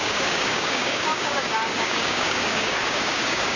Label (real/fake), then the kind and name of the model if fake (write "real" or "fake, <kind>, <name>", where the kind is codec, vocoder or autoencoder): fake, codec, DAC